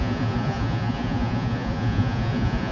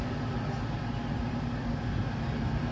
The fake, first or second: first